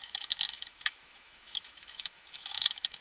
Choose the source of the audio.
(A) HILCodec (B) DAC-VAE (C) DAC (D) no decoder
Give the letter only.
B